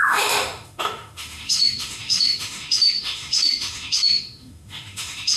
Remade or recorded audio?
remade